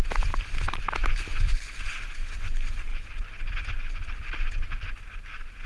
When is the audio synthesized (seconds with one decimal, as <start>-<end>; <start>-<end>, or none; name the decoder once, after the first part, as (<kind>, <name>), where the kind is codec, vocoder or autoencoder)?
none